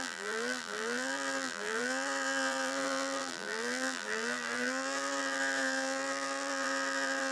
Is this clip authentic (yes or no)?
no